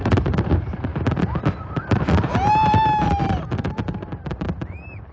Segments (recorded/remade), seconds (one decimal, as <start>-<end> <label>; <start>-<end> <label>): 0.0-5.1 remade